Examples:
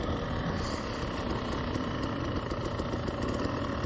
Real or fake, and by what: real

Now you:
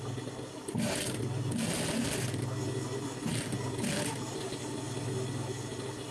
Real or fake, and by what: real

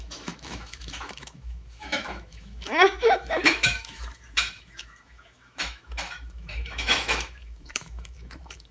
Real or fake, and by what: fake, autoencoder, DAC-VAE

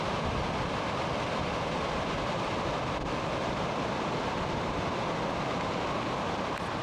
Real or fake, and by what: real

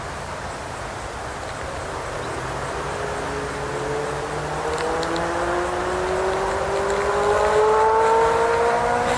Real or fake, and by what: real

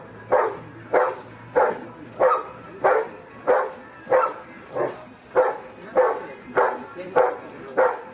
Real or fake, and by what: real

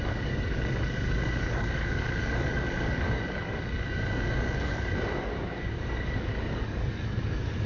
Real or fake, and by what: fake, codec, DAC